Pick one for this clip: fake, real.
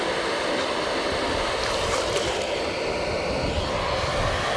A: real